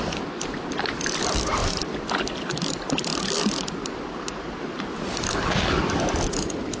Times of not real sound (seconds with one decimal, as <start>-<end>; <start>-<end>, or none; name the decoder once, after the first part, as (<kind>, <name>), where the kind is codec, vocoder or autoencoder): none